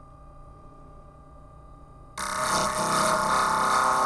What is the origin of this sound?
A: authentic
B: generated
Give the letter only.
A